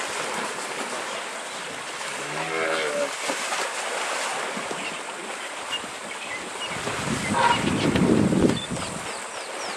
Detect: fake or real real